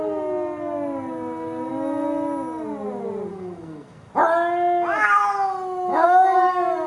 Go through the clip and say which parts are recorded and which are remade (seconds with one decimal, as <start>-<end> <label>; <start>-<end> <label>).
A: 0.0-3.3 recorded; 3.3-4.1 remade; 4.1-5.9 recorded; 5.9-6.5 remade; 6.5-6.9 recorded